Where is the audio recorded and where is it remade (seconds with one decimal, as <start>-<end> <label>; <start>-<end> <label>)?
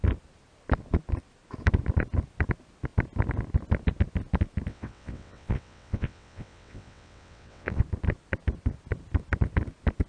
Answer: 0.0-4.7 recorded; 4.7-7.8 remade; 7.8-10.1 recorded